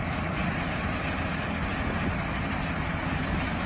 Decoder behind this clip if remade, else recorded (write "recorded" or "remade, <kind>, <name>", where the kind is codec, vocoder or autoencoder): recorded